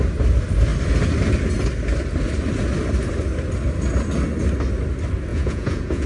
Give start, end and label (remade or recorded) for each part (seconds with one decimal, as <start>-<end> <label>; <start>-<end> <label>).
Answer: 0.0-5.3 recorded; 5.3-6.1 remade